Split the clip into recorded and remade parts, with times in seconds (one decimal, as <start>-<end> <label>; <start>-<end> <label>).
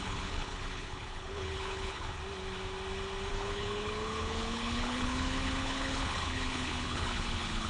0.0-2.2 remade; 2.2-3.3 recorded; 3.3-7.7 remade